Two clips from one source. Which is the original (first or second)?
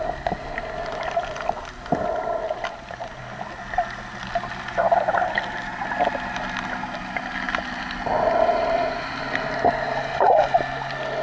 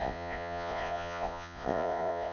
first